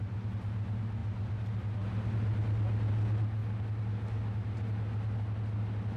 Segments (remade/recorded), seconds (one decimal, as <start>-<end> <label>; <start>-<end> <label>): 0.0-6.0 recorded